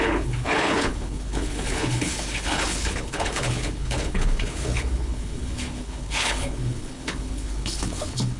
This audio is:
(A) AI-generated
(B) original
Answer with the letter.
A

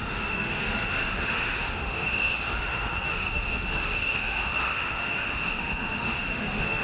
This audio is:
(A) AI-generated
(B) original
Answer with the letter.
A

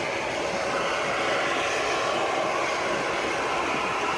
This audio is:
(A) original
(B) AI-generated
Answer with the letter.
A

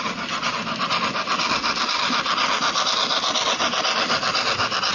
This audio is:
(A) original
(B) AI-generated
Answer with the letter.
A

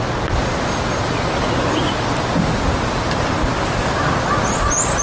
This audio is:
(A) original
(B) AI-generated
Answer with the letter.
A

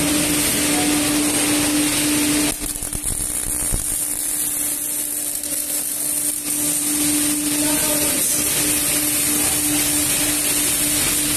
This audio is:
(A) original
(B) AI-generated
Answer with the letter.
A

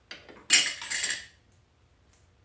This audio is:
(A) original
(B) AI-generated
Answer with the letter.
A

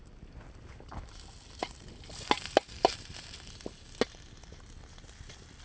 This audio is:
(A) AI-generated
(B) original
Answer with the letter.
B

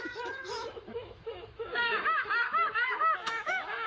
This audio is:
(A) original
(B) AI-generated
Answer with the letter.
B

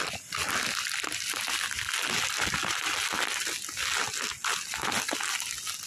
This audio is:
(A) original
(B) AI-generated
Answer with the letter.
A